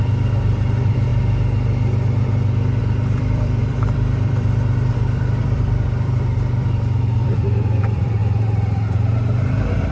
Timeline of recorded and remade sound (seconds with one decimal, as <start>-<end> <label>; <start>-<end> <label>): 0.0-1.1 remade; 1.1-2.8 recorded; 2.8-8.2 remade; 8.2-9.9 recorded